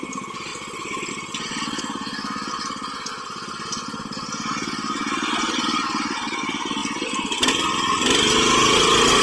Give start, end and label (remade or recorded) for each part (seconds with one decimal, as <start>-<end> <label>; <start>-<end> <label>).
0.0-0.5 recorded; 0.5-1.1 remade; 1.1-9.2 recorded